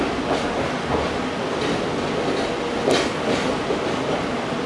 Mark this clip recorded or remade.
recorded